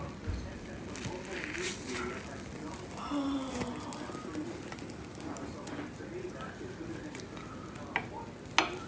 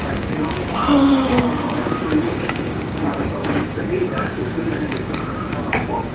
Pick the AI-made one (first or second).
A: second